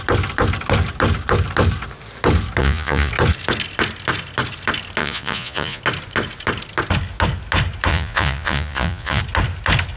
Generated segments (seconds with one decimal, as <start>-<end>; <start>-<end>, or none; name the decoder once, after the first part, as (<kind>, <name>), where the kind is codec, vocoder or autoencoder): 2.6-3.1 (vocoder, Vocos); 5.0-5.8; 7.9-9.2